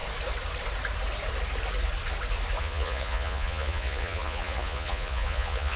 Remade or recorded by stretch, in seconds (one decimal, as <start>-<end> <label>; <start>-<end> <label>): 0.0-2.6 recorded; 2.6-5.8 remade